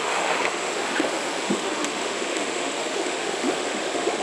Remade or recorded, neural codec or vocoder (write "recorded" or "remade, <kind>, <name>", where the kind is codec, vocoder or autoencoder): remade, autoencoder, DAC-VAE